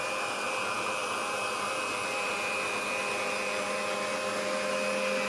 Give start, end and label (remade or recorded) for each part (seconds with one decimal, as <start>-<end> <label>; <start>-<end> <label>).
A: 0.0-5.3 recorded